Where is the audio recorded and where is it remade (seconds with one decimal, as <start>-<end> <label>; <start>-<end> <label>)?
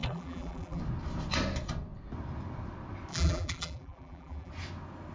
0.0-0.8 remade; 0.8-3.1 recorded; 3.1-4.5 remade; 4.5-5.1 recorded